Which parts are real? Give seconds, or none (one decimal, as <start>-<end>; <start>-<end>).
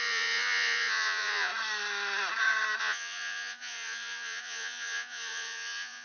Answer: 1.5-2.8